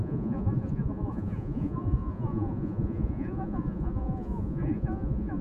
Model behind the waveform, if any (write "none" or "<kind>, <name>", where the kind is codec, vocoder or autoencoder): vocoder, Vocos